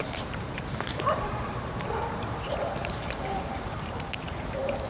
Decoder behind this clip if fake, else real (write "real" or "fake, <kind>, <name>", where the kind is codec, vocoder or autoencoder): fake, vocoder, BigVGAN v2